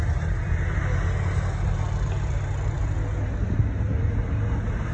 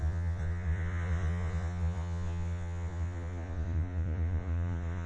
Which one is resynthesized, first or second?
second